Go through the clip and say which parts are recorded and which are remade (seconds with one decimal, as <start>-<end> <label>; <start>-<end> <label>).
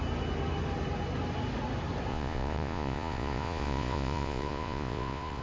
0.0-2.1 recorded; 2.1-5.4 remade